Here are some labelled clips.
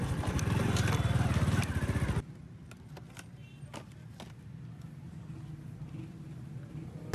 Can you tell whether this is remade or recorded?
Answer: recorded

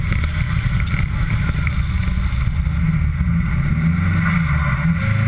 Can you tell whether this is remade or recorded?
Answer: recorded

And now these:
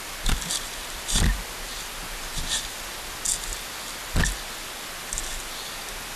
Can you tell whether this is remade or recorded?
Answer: recorded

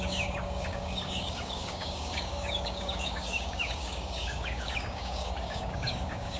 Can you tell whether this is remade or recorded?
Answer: remade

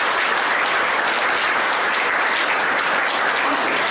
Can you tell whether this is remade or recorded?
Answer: recorded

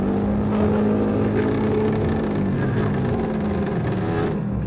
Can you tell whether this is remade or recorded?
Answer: recorded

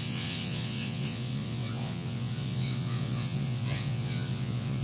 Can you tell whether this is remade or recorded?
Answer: remade